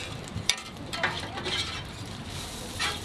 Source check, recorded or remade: remade